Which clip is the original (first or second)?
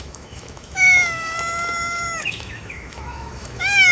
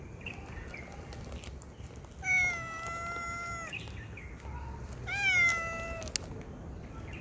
second